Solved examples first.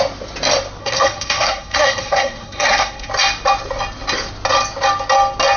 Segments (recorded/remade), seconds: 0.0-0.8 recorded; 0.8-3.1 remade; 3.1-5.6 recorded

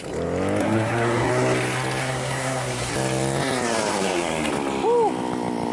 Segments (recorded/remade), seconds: 0.0-0.6 recorded; 0.6-1.3 remade; 1.3-2.0 recorded; 2.0-2.9 remade; 2.9-3.9 recorded; 3.9-4.5 remade; 4.5-5.7 recorded

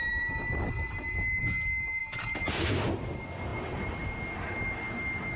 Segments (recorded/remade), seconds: 0.0-5.4 recorded

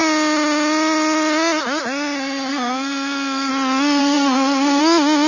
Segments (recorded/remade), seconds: 0.0-2.5 recorded; 2.5-3.5 remade; 3.5-4.0 recorded; 4.0-4.8 remade; 4.8-5.3 recorded

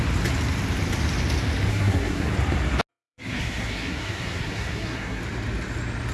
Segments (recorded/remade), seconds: 0.0-1.7 recorded; 1.7-2.3 remade; 2.3-2.9 recorded; 2.9-5.2 remade; 5.2-6.1 recorded

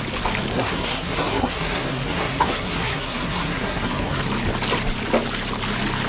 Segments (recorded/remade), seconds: 0.0-0.5 recorded; 0.5-4.2 remade; 4.2-6.1 recorded

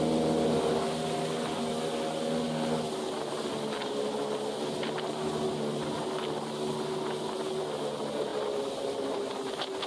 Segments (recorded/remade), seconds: 0.0-9.9 recorded

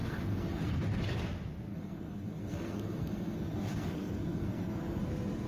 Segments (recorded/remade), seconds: 0.0-0.8 remade; 0.8-1.7 recorded; 1.7-5.0 remade; 5.0-5.5 recorded